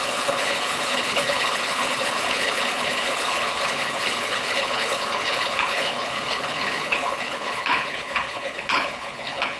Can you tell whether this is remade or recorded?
remade